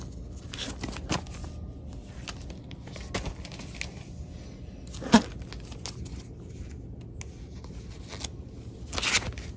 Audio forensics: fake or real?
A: real